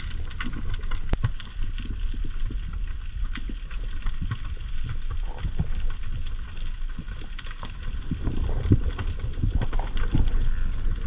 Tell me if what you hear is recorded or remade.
recorded